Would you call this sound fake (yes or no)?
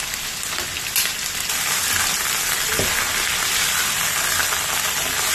no